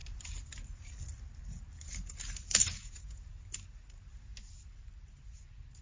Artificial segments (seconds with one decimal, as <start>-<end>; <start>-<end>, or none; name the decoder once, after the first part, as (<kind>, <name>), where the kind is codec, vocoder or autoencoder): 2.6-3.3 (vocoder, Vocos)